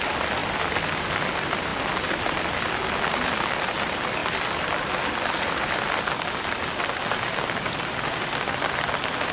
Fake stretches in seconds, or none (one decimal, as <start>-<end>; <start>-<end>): none